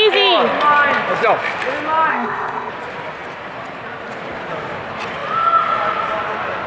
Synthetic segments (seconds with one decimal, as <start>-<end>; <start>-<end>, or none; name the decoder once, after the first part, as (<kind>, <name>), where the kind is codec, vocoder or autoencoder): 2.1-2.7 (codec, ZipCodec)